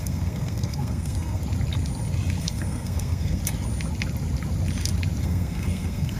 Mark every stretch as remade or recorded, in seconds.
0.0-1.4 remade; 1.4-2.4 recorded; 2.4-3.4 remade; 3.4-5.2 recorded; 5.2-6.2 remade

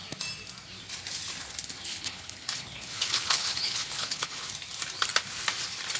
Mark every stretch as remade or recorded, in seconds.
0.0-1.9 recorded; 1.9-4.5 remade; 4.5-6.0 recorded